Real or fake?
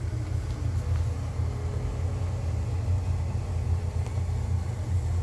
real